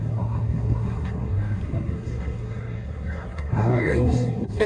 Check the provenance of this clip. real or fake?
fake